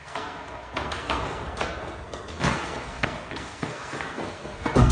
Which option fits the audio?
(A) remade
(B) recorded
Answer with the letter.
A